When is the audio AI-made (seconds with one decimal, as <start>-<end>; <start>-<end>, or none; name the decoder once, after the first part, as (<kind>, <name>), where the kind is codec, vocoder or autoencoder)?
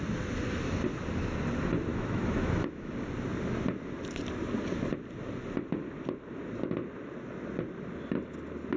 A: 1.9-2.9 (autoencoder, DAC-VAE)